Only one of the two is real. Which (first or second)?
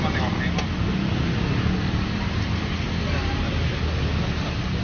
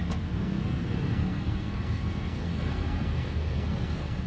first